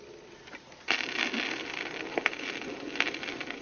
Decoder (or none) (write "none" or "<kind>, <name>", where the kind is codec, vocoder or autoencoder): none